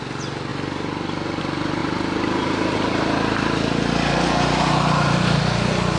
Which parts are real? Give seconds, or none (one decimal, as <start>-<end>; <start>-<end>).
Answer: 0.0-1.8; 5.4-6.0